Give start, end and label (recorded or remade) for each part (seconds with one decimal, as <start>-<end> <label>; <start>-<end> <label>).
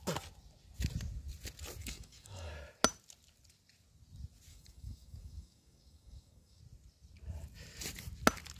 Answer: 0.0-1.8 recorded; 1.8-2.5 remade; 2.5-4.5 recorded; 4.5-6.6 remade; 6.6-8.6 recorded